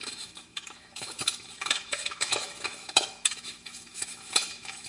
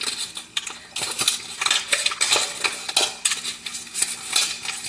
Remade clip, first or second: first